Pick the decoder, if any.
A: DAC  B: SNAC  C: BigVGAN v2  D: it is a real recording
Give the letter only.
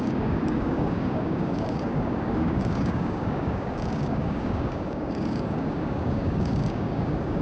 A